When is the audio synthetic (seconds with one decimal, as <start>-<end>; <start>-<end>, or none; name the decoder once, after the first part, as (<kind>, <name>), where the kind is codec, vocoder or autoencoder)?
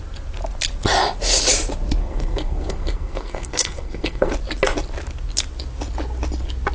2.0-4.3 (codec, SNAC)